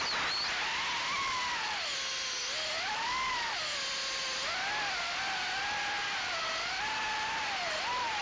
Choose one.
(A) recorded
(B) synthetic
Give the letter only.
A